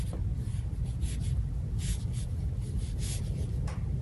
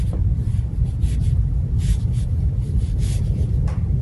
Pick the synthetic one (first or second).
second